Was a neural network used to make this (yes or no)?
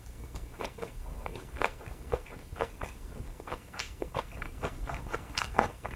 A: yes